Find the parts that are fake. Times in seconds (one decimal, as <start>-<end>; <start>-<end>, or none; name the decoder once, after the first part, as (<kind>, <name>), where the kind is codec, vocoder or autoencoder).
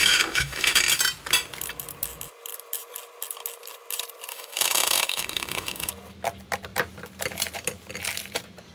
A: 0.0-0.8 (autoencoder, DAC-VAE); 4.3-5.9